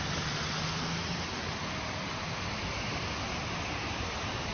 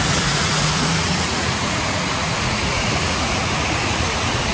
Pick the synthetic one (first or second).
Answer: second